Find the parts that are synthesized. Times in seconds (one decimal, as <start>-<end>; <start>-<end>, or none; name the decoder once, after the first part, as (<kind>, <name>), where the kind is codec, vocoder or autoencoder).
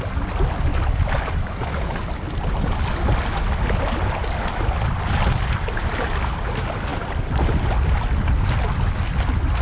none